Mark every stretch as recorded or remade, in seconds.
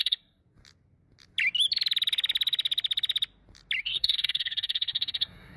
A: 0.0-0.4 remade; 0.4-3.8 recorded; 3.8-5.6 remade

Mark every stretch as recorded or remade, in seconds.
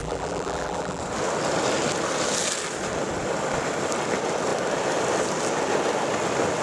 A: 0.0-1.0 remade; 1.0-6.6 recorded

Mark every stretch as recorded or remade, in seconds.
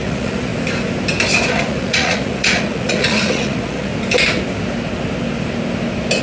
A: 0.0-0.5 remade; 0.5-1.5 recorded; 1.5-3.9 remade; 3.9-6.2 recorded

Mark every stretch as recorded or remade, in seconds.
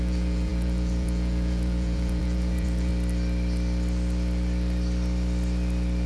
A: 0.0-2.9 remade; 2.9-6.1 recorded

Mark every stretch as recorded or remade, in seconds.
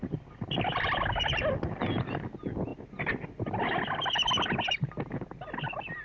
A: 0.0-6.0 recorded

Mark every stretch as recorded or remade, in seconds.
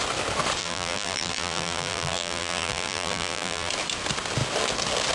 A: 0.0-0.6 recorded; 0.6-3.7 remade; 3.7-5.1 recorded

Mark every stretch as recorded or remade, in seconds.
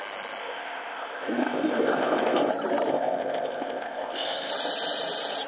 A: 0.0-0.4 recorded; 0.4-2.5 remade; 2.5-2.9 recorded; 2.9-4.5 remade; 4.5-5.5 recorded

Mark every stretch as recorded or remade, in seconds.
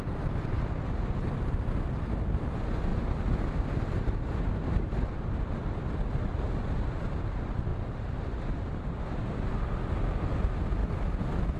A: 0.0-11.6 recorded